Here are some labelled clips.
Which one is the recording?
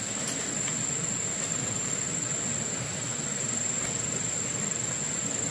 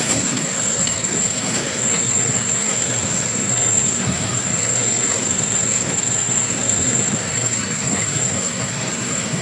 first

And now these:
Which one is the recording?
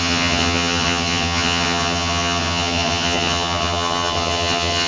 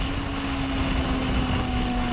second